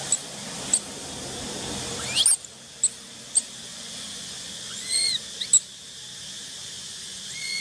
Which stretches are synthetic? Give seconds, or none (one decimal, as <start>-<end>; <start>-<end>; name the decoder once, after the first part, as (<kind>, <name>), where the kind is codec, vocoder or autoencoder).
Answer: 3.7-5.1 (vocoder, Vocos); 6.6-7.6